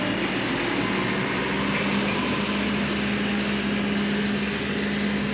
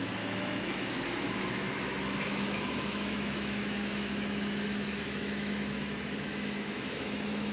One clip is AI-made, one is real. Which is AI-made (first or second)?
second